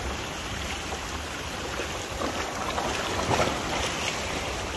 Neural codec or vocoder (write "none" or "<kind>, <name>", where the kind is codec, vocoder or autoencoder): none